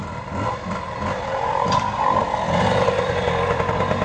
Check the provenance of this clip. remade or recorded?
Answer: remade